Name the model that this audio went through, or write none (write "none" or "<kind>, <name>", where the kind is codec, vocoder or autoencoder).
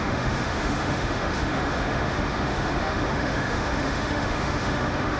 autoencoder, DAC-VAE